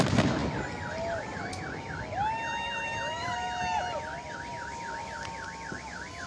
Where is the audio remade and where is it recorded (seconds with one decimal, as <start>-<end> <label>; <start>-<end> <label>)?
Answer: 0.0-6.3 recorded